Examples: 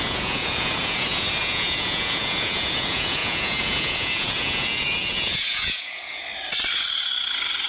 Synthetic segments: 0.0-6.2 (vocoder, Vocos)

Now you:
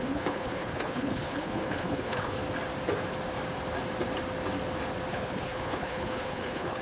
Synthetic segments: 0.0-2.4 (codec, HILCodec); 5.1-6.8

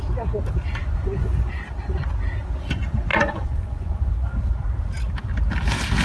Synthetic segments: 0.8-1.5 (vocoder, Vocos); 3.1-4.1